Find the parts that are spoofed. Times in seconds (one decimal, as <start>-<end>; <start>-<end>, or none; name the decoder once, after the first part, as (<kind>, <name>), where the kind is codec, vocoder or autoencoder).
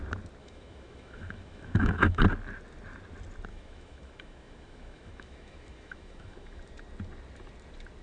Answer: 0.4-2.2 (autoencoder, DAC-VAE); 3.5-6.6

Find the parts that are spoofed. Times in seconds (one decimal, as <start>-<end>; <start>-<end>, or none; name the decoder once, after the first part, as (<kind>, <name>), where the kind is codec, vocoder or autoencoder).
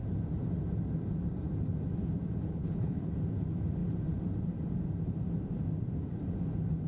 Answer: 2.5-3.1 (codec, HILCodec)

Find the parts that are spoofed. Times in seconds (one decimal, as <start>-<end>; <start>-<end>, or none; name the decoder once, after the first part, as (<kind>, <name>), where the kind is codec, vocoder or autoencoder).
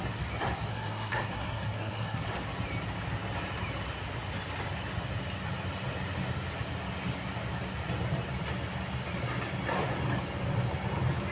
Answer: 0.7-2.2 (codec, SNAC)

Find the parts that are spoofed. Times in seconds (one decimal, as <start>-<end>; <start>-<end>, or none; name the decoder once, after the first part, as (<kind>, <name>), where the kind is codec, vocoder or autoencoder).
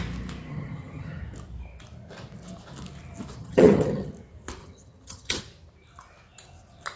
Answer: 0.5-1.2 (vocoder, HiFi-GAN); 3.4-4.1; 4.6-5.4